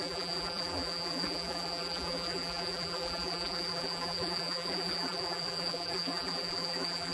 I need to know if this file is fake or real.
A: fake